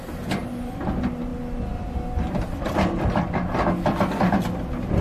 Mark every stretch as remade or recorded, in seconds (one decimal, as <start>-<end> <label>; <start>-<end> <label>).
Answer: 0.0-5.0 recorded